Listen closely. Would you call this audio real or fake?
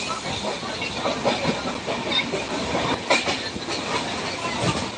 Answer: real